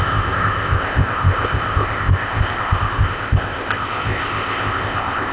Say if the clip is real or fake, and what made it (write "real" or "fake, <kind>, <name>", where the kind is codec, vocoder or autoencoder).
fake, codec, ZipCodec